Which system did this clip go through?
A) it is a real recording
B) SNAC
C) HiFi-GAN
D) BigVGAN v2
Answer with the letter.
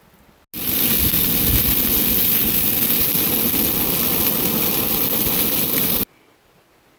A